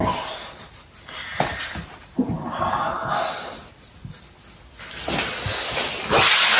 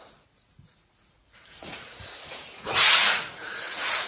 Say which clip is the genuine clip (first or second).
first